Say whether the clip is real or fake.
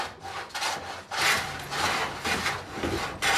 real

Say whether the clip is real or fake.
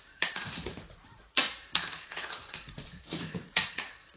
fake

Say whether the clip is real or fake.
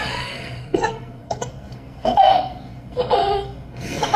fake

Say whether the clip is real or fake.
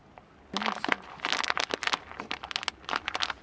real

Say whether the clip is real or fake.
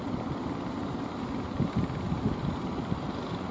real